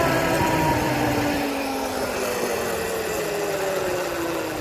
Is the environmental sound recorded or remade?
recorded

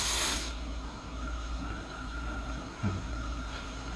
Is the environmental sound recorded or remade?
remade